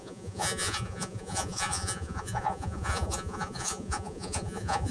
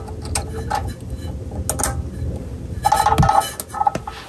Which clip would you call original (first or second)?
second